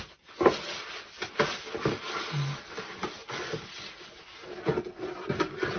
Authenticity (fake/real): real